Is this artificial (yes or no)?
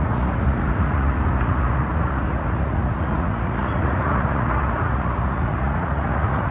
yes